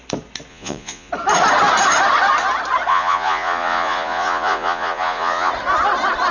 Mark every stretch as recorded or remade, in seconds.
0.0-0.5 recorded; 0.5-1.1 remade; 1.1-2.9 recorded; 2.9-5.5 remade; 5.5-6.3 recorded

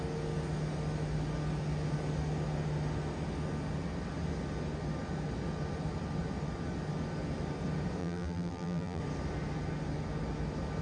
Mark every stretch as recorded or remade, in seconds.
0.0-8.0 recorded; 8.0-9.0 remade; 9.0-10.8 recorded

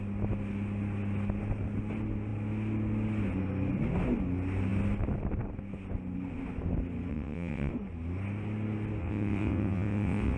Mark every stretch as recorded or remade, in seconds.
0.0-7.1 recorded; 7.1-7.7 remade; 7.7-9.0 recorded; 9.0-10.4 remade

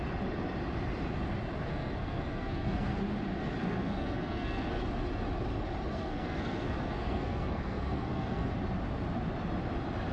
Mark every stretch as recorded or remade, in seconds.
0.0-1.7 recorded; 1.7-3.0 remade; 3.0-3.6 recorded; 3.6-4.8 remade; 4.8-5.9 recorded; 5.9-8.5 remade; 8.5-10.1 recorded

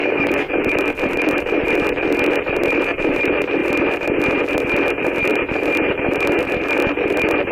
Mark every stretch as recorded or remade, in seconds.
0.0-0.5 remade; 0.5-7.5 recorded

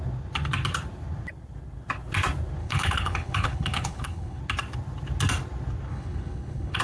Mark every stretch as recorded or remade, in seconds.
0.0-2.6 recorded; 2.6-4.4 remade; 4.4-5.9 recorded; 5.9-6.8 remade

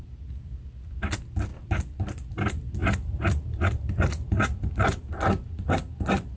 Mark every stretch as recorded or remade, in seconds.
0.0-2.8 recorded; 2.8-5.1 remade; 5.1-6.4 recorded

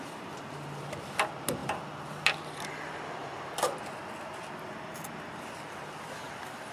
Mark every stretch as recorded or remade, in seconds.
0.0-6.7 recorded